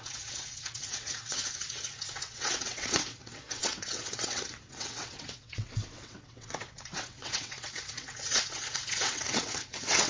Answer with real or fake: fake